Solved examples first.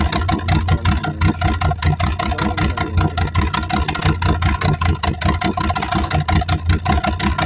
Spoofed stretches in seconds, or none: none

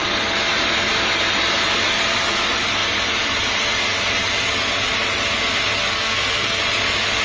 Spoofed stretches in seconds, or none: 5.8-6.6 (codec, SNAC)

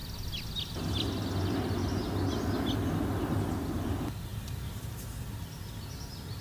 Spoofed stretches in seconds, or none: none